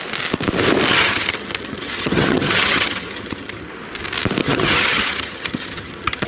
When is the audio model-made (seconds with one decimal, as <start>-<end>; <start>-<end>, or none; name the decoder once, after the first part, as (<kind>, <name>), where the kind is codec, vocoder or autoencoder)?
0.9-3.7 (vocoder, HiFi-GAN); 4.4-6.3